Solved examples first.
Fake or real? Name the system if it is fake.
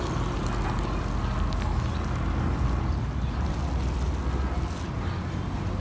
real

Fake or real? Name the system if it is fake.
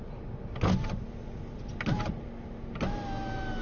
real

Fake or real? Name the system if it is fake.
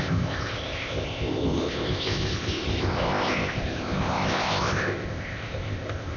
fake, codec, ZipCodec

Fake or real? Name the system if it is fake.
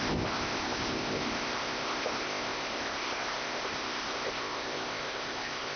fake, codec, ZipCodec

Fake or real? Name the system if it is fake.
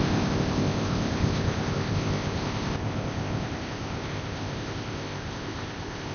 fake, codec, ZipCodec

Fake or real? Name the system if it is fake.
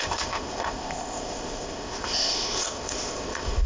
fake, codec, ZipCodec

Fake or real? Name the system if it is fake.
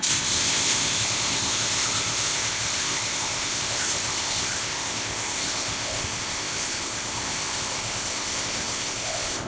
fake, codec, ZipCodec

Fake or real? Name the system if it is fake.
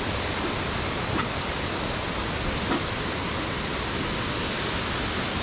real